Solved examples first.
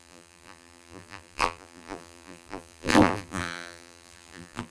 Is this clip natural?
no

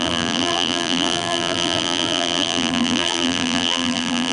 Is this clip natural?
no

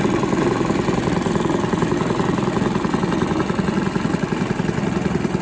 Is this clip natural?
no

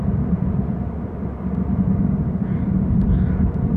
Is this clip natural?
no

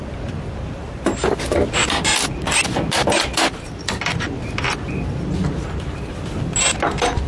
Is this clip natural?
yes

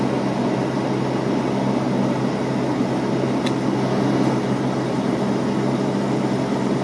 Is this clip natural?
yes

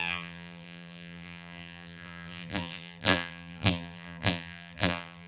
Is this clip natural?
no